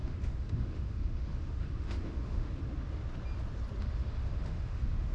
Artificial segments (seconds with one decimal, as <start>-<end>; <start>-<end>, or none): 0.0-2.6; 3.8-5.1